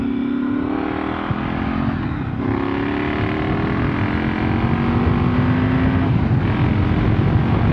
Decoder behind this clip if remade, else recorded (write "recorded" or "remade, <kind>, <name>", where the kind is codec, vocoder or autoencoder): recorded